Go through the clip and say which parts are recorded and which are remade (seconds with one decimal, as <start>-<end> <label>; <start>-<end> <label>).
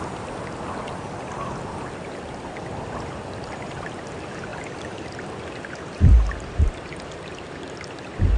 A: 0.0-8.4 recorded